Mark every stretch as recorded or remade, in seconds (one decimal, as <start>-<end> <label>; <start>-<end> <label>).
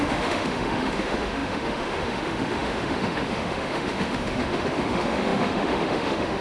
0.0-6.4 remade